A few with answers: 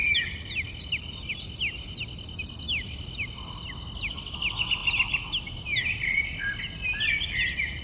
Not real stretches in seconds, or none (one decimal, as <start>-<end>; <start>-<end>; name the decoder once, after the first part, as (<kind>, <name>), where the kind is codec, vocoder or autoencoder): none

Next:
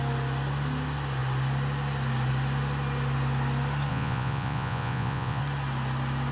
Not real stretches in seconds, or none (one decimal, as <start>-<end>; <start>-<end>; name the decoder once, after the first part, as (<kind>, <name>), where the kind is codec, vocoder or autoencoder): 3.9-5.4 (vocoder, Vocos)

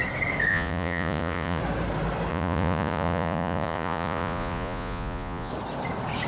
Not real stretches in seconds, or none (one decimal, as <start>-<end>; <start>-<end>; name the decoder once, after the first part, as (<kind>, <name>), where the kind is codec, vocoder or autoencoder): 0.5-1.6 (vocoder, Vocos); 2.3-5.5

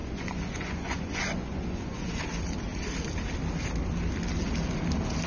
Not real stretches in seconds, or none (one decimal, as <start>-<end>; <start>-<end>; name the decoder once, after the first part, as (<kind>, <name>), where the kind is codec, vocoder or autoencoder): 0.0-2.2 (vocoder, Vocos)